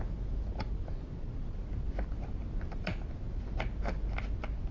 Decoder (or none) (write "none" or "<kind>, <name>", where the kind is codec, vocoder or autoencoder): none